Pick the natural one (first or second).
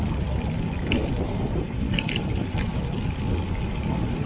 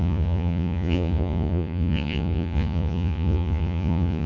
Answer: first